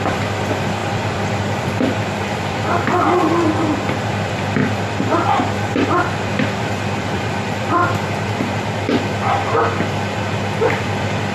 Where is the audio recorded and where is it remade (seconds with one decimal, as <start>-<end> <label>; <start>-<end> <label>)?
0.0-7.8 remade; 7.8-10.7 recorded; 10.7-11.3 remade